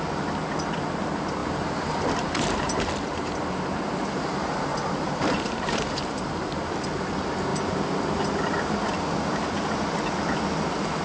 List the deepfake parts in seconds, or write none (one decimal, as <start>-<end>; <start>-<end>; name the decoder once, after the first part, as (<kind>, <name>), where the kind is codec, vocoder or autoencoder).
1.4-2.8 (vocoder, BigVGAN v2); 4.7-6.4